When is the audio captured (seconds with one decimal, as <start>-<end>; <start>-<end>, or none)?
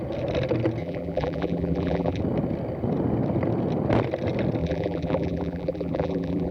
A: 0.0-0.8; 2.2-4.6